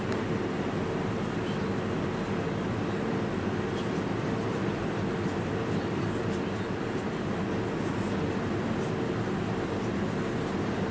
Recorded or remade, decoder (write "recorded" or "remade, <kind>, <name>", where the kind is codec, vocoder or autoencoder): recorded